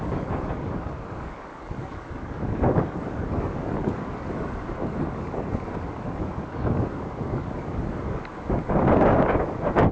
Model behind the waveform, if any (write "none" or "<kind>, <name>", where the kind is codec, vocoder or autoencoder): codec, DAC